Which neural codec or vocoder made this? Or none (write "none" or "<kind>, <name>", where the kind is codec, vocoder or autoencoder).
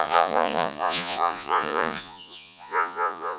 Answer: vocoder, Vocos